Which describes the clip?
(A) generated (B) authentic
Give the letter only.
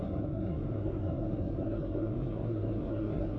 A